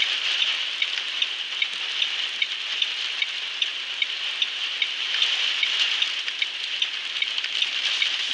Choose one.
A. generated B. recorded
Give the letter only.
B